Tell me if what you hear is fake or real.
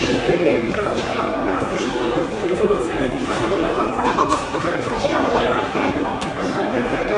fake